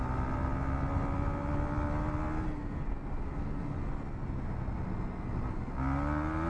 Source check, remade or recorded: recorded